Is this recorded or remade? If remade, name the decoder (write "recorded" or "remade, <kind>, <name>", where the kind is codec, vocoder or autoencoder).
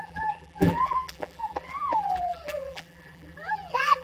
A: remade, vocoder, BigVGAN v2